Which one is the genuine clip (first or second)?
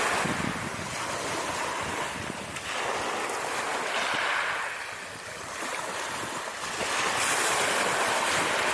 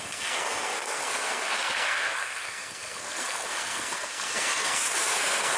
first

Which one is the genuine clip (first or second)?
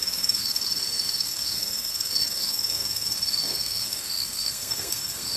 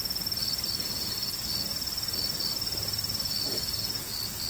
second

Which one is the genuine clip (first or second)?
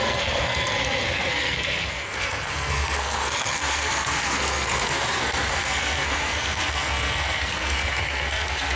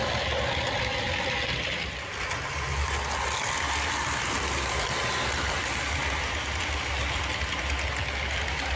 second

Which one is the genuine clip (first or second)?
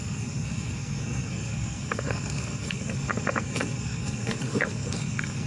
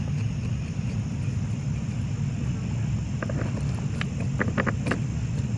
second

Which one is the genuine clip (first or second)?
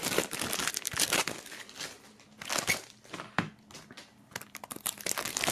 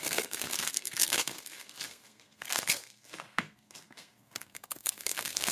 first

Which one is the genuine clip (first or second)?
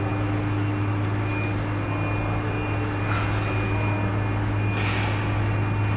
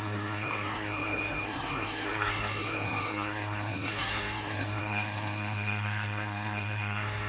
first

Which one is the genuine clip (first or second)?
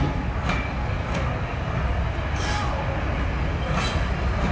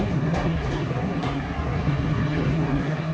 first